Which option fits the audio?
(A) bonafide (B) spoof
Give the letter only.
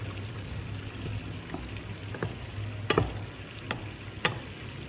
A